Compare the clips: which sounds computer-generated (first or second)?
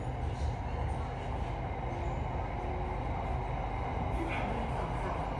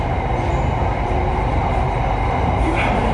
second